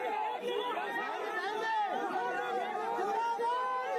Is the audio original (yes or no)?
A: yes